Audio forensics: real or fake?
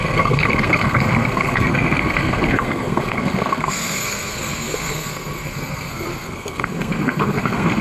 fake